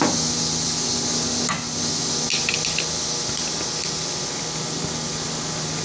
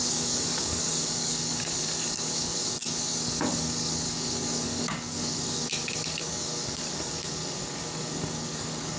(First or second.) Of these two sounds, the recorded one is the first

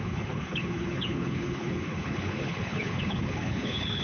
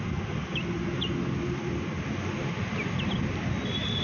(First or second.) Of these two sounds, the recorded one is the second